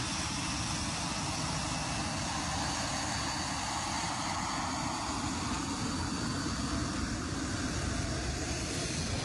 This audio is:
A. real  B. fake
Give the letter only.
A